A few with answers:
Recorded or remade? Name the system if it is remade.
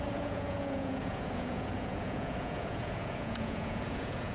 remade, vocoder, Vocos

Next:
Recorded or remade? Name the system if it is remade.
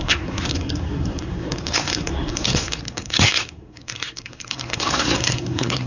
remade, codec, SNAC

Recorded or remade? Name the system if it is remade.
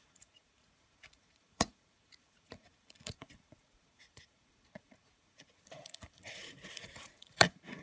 remade, vocoder, Vocos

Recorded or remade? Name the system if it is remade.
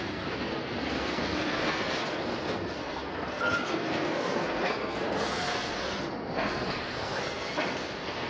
remade, codec, SNAC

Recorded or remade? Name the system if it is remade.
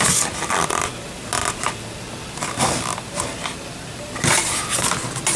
recorded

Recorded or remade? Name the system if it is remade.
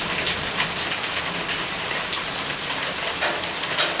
recorded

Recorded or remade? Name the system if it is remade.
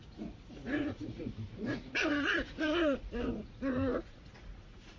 remade, vocoder, Vocos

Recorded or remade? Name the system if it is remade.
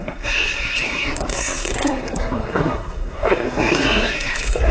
remade, codec, SNAC